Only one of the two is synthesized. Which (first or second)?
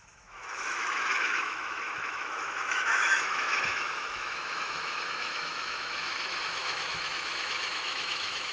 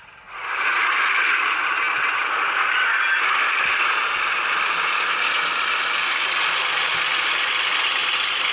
first